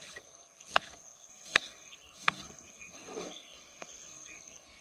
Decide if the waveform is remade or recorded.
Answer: remade